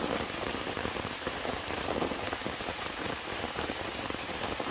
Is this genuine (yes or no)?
no